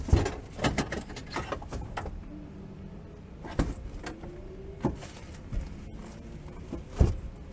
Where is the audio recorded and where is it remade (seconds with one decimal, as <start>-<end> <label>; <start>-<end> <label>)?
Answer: 0.0-7.5 recorded